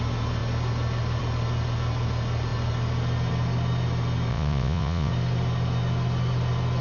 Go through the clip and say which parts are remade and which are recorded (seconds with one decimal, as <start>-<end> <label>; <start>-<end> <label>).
0.0-4.3 recorded; 4.3-5.1 remade; 5.1-6.8 recorded